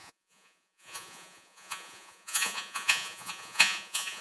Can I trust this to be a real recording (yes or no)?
no